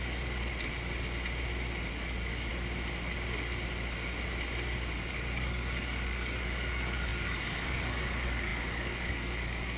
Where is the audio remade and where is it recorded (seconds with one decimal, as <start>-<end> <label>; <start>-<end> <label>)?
0.0-0.5 remade; 0.5-1.9 recorded; 1.9-2.5 remade; 2.5-5.1 recorded; 5.1-9.8 remade